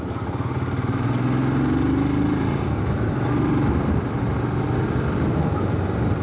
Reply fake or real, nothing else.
real